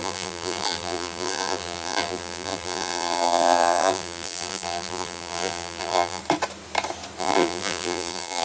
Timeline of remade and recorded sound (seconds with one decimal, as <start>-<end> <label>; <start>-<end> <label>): 0.0-6.2 remade; 6.2-7.2 recorded; 7.2-8.4 remade

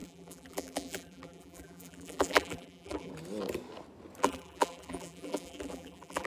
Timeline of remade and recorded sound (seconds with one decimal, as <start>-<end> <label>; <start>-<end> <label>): 0.0-3.1 remade; 3.1-4.2 recorded; 4.2-6.3 remade